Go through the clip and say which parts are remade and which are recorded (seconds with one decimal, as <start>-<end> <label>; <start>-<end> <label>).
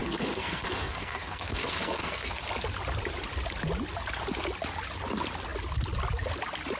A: 0.0-2.4 remade; 2.4-6.8 recorded